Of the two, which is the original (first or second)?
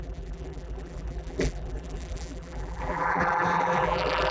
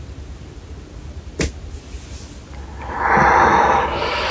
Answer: second